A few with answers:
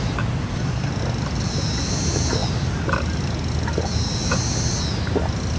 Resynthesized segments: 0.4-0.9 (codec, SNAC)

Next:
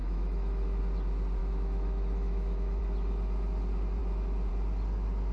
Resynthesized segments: 0.0-0.8 (autoencoder, DAC-VAE); 1.4-2.8